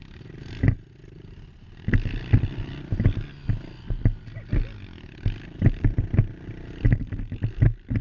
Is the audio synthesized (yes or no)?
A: no